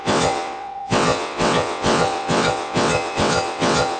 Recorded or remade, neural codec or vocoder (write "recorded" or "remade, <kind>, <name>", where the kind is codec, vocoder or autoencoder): remade, vocoder, WaveNeXt